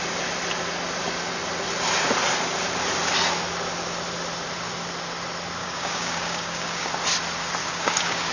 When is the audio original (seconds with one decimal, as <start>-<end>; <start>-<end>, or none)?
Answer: 0.0-5.6; 6.9-7.6